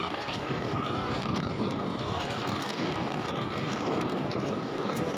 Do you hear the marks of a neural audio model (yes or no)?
yes